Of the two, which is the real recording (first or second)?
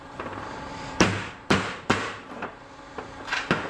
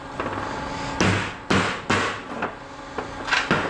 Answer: second